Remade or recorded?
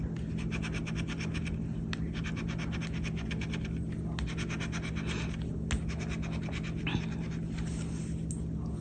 recorded